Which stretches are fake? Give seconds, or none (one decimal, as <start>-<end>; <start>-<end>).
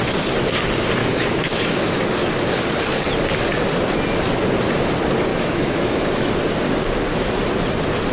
1.0-2.0; 5.3-6.3